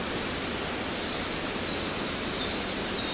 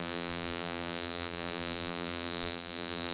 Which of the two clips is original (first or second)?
first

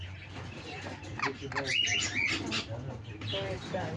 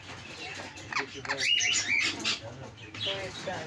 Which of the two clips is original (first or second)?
second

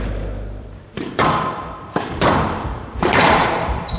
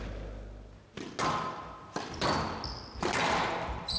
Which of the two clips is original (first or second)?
second